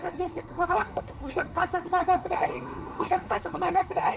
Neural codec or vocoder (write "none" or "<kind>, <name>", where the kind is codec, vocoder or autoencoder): codec, SNAC